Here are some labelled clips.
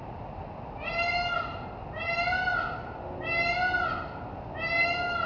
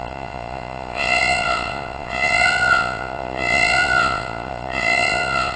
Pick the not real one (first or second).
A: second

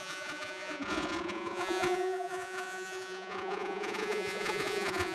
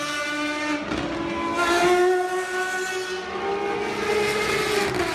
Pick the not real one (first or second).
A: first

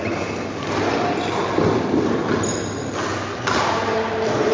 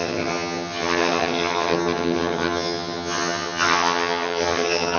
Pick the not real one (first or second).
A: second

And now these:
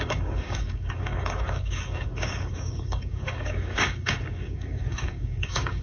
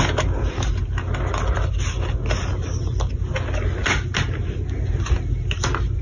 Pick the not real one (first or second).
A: first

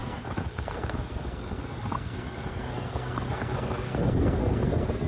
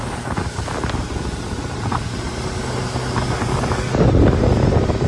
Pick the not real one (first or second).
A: first